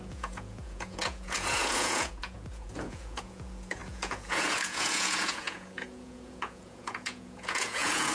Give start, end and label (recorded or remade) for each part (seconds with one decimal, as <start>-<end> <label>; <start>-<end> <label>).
0.0-8.1 remade